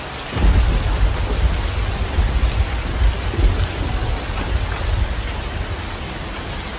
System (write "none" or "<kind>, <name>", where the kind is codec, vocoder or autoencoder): none